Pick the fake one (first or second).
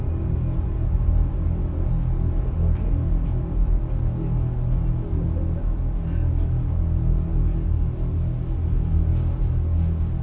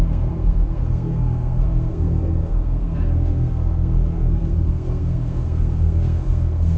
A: second